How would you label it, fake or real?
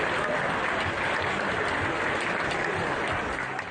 real